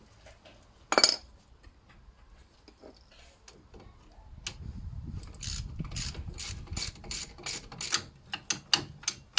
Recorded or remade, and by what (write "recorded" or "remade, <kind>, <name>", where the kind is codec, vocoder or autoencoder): recorded